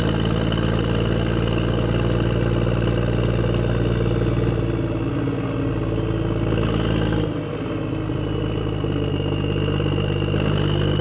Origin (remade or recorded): recorded